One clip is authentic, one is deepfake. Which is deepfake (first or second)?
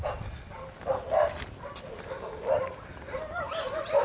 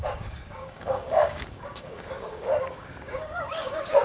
second